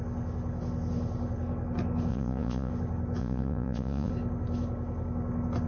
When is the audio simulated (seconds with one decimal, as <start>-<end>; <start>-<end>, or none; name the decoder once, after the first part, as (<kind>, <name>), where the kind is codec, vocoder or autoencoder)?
2.1-2.7 (vocoder, Vocos); 3.2-4.1